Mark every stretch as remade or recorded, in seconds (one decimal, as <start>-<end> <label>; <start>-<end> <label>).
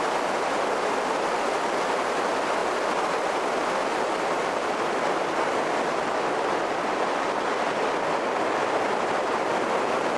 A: 0.0-10.2 recorded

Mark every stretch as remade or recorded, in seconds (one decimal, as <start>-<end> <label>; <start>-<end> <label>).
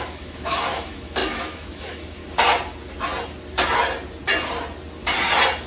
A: 0.0-2.2 remade; 2.2-5.7 recorded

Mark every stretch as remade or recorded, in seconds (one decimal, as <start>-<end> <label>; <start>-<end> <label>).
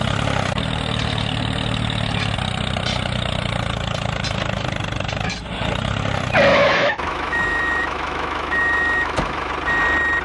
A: 0.0-6.5 recorded; 6.5-9.5 remade; 9.5-10.2 recorded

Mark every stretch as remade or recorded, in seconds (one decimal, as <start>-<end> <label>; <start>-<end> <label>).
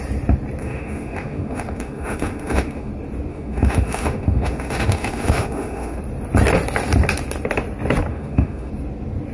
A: 0.0-0.6 recorded; 0.6-2.9 remade; 2.9-3.3 recorded; 3.3-6.0 remade; 6.0-8.1 recorded; 8.1-8.7 remade; 8.7-9.3 recorded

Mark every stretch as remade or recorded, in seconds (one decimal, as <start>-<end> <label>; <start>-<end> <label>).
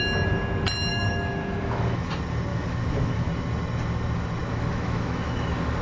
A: 0.0-0.9 recorded; 0.9-2.1 remade; 2.1-2.5 recorded; 2.5-3.3 remade; 3.3-4.4 recorded; 4.4-5.8 remade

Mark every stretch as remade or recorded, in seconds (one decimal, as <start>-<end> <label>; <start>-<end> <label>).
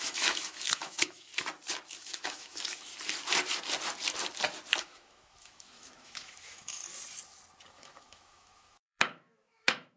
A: 0.0-1.3 remade; 1.3-1.9 recorded; 1.9-2.9 remade; 2.9-4.8 recorded; 4.8-6.8 remade; 6.8-7.7 recorded; 7.7-10.0 remade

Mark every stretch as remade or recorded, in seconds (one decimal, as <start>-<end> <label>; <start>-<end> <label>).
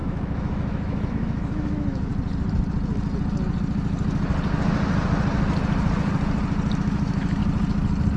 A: 0.0-2.1 remade; 2.1-6.8 recorded; 6.8-7.4 remade; 7.4-8.2 recorded